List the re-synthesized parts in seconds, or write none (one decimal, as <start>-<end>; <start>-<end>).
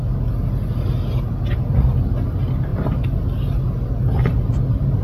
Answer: none